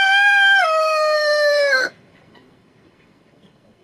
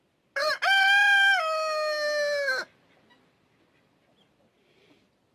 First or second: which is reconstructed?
first